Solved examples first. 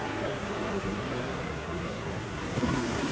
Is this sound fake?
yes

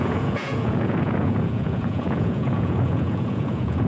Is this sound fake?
yes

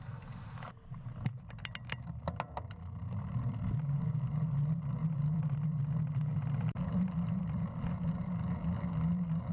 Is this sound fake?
no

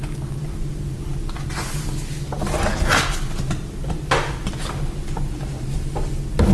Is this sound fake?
no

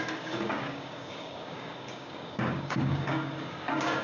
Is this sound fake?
yes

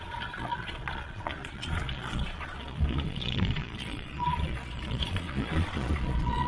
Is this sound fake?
yes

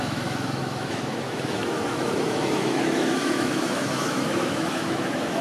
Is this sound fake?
yes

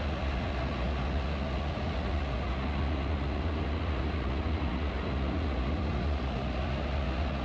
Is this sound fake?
yes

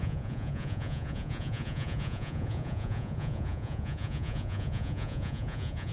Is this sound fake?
yes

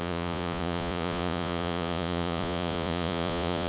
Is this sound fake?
yes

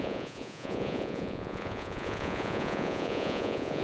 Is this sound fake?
yes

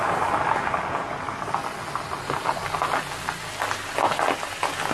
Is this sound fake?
no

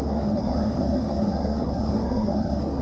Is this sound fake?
yes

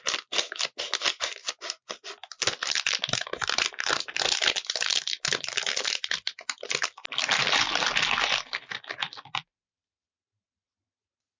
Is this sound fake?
no